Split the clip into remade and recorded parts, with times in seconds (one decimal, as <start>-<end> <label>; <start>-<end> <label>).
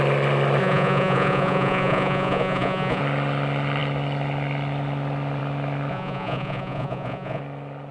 0.0-0.6 recorded; 0.6-3.0 remade; 3.0-5.9 recorded; 5.9-7.4 remade; 7.4-7.9 recorded